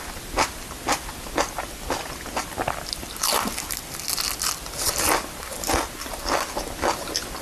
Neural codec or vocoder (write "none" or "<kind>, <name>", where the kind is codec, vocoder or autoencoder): none